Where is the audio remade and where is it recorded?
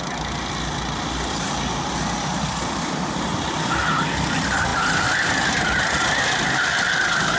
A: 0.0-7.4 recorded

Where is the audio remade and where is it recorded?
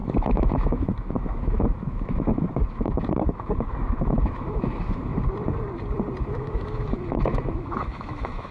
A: 0.0-5.1 remade; 5.1-6.2 recorded; 6.2-8.5 remade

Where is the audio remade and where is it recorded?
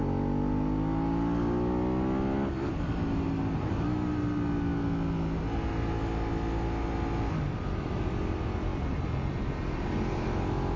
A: 0.0-10.8 recorded